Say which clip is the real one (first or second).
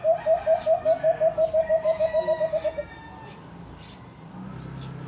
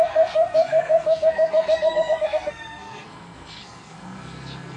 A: first